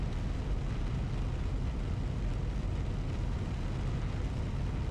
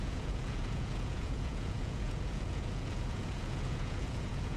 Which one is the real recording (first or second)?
first